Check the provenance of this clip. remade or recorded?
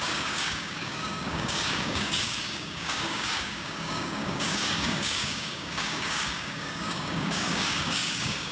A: remade